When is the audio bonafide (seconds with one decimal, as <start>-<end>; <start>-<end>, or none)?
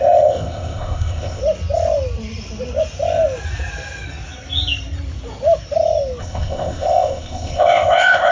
1.4-6.2